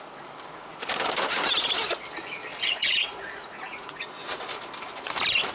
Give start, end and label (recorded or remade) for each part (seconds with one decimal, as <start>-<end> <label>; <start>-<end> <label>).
0.0-2.5 recorded; 2.5-4.0 remade; 4.0-5.5 recorded